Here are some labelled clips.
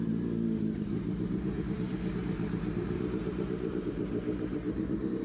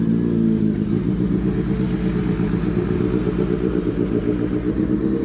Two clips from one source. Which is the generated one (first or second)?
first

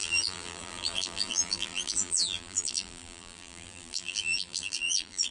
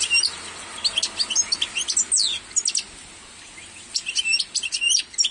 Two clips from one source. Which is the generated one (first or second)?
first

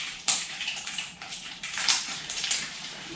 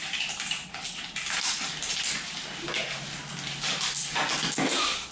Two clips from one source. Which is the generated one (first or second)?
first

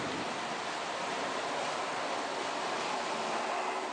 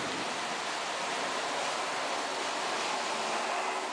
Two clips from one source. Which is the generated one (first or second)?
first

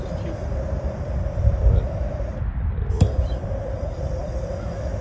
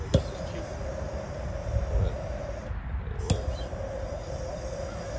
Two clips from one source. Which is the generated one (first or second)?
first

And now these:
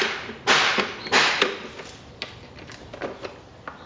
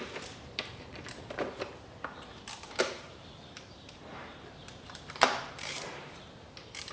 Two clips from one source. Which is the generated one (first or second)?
second